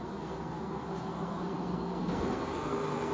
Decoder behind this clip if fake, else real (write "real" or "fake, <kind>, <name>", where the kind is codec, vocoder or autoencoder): fake, codec, SNAC